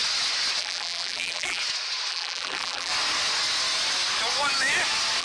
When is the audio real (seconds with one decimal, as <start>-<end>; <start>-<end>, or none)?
0.0-0.6; 1.6-2.1; 2.9-5.2